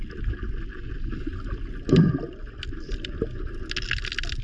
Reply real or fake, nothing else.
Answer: real